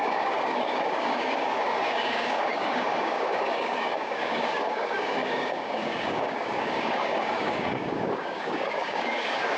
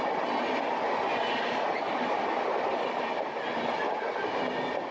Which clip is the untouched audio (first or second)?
second